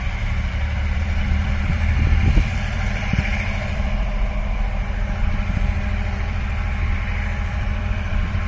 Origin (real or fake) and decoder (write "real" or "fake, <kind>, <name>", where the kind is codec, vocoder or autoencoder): fake, vocoder, BigVGAN v2